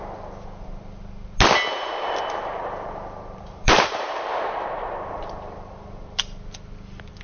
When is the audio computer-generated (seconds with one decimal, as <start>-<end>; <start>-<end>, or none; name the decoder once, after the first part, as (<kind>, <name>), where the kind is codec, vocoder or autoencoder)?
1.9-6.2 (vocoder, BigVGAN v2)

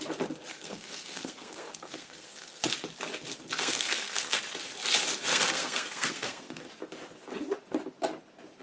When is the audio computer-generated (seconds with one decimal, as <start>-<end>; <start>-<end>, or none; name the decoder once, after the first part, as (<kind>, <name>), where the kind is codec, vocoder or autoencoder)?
0.5-2.7 (codec, SNAC); 3.6-4.4; 5.3-6.6

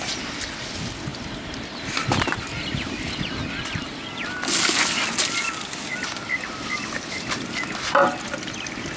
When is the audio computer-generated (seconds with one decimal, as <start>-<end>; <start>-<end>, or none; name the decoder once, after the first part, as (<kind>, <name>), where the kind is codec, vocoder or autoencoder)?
none